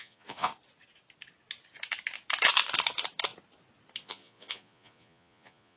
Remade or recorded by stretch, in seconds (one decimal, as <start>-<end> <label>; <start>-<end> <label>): 0.0-0.5 remade; 0.5-4.0 recorded; 4.0-5.8 remade